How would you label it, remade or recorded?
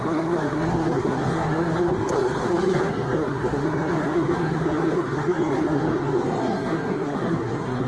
remade